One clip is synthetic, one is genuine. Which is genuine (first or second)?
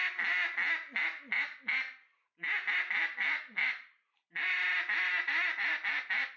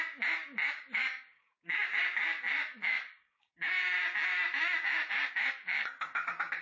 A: first